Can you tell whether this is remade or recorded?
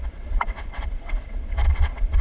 remade